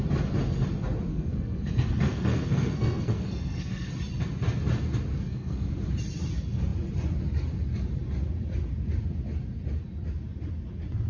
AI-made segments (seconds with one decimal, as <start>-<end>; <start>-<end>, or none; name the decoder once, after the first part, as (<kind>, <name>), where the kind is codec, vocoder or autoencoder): 1.1-3.9 (codec, SNAC); 5.1-5.7